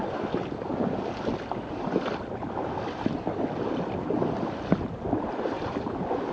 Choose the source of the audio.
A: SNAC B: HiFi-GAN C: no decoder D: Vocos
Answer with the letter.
C